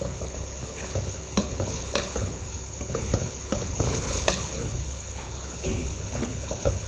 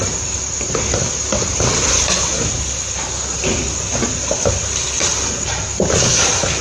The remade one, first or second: first